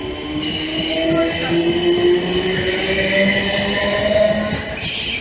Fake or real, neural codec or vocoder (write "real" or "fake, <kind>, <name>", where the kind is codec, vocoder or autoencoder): real